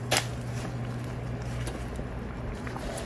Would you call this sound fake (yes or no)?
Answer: no